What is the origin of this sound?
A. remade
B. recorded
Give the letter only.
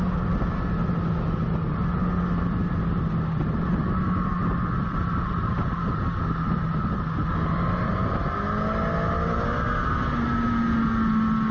B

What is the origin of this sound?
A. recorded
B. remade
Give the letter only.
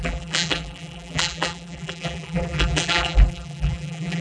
B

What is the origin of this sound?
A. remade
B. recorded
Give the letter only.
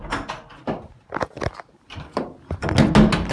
B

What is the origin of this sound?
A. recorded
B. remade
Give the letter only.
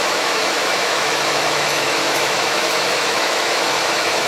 B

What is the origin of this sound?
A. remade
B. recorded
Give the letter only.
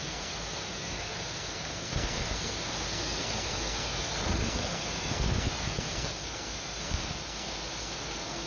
A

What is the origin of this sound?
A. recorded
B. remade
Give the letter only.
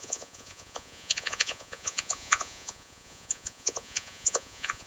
B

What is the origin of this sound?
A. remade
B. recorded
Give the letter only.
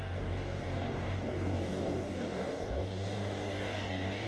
A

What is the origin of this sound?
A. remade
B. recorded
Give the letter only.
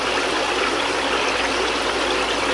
B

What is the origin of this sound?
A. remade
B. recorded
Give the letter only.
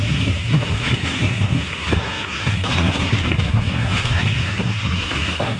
A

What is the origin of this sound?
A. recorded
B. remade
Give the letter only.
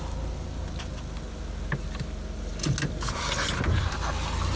A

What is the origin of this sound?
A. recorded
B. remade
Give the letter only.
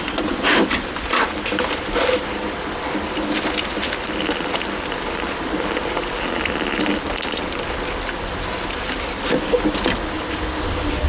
A